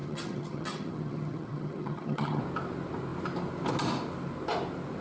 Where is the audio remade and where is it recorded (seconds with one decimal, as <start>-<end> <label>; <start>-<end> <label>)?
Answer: 0.0-2.4 remade; 2.4-5.0 recorded